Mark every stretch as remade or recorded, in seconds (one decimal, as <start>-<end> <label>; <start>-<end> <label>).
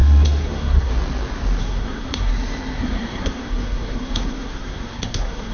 0.0-0.9 remade; 0.9-1.6 recorded; 1.6-2.3 remade; 2.3-2.8 recorded; 2.8-5.5 remade